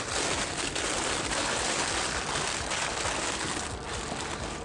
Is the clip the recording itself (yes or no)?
yes